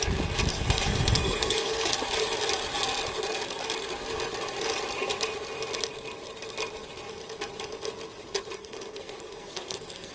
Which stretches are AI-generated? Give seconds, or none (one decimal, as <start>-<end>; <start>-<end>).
0.5-1.9; 8.5-10.1